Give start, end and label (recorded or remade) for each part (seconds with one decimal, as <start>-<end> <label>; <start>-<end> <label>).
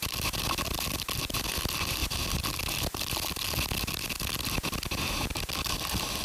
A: 0.0-6.2 recorded